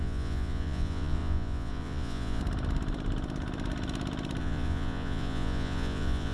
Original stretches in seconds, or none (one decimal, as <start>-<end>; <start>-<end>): 2.4-4.4